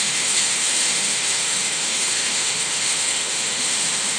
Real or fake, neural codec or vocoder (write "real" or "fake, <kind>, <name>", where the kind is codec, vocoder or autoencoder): fake, autoencoder, DAC-VAE